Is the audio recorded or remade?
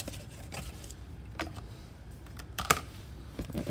remade